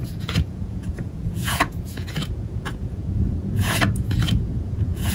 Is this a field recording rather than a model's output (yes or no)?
no